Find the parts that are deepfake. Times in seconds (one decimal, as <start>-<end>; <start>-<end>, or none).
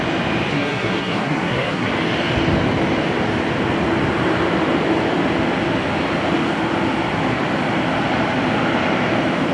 0.5-1.9